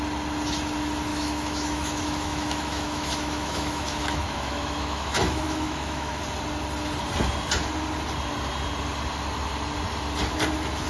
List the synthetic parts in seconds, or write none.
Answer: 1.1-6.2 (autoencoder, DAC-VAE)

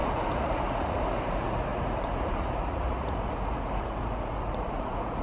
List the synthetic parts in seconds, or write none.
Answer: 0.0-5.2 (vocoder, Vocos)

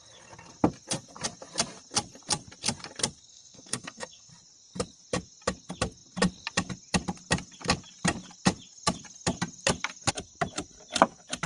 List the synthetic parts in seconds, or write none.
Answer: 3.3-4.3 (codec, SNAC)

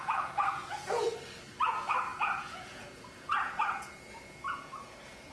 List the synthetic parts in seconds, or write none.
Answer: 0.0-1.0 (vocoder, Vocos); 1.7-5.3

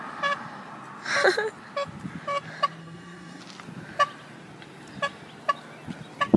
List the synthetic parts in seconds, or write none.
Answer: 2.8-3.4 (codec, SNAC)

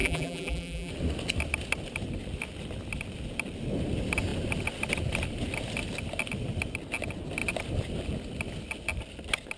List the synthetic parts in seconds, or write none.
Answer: 0.0-0.9 (vocoder, BigVGAN v2)